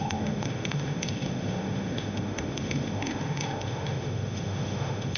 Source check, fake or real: fake